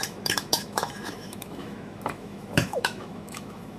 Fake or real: fake